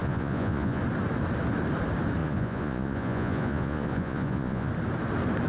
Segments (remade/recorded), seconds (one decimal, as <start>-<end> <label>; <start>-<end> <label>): 0.0-0.8 remade; 0.8-2.2 recorded; 2.2-4.7 remade; 4.7-5.5 recorded